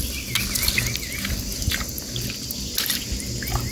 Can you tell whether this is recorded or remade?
recorded